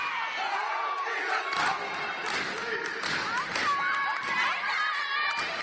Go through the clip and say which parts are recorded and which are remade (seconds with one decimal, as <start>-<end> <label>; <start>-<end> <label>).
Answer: 0.0-0.4 recorded; 0.4-1.4 remade; 1.4-5.6 recorded